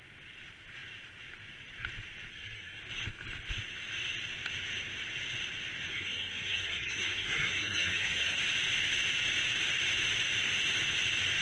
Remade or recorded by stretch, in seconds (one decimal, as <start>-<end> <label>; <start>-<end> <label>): 0.0-2.3 recorded; 2.3-2.8 remade; 2.8-5.9 recorded; 5.9-8.4 remade; 8.4-11.4 recorded

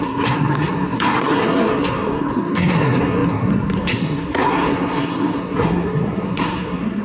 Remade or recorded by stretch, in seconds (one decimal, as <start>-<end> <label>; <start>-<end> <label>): 0.0-7.0 remade

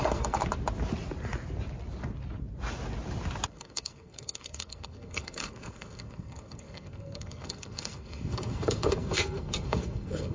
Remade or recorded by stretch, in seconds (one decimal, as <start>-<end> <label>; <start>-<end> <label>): 0.0-0.4 remade; 0.4-3.5 recorded; 3.5-10.3 remade

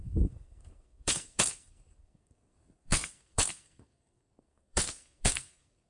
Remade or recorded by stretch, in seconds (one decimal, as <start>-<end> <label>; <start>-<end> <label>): 0.0-5.9 remade

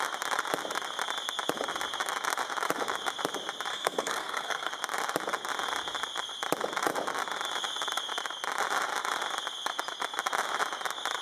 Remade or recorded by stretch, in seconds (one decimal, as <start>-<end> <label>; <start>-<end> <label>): 0.0-3.7 recorded; 3.7-4.7 remade; 4.7-11.2 recorded